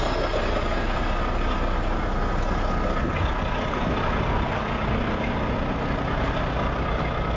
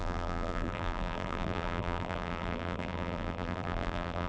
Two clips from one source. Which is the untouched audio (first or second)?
first